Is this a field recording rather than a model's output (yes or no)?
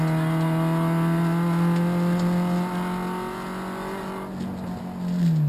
yes